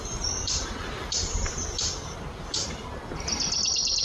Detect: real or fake fake